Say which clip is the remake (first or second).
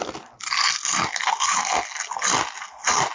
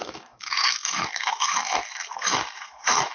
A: second